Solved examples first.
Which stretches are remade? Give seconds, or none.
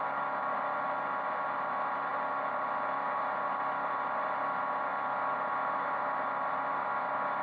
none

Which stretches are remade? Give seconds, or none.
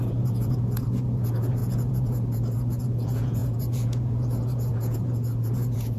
0.0-6.0 (vocoder, Vocos)